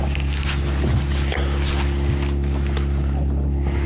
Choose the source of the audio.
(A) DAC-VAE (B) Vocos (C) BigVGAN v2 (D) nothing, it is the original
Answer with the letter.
D